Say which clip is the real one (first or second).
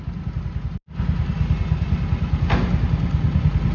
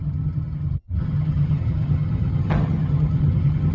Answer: first